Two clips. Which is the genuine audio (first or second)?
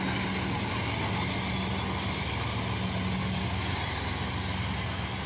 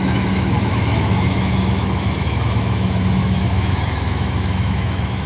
first